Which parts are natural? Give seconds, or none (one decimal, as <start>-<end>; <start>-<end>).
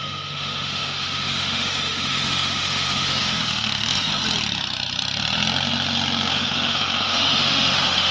4.1-6.3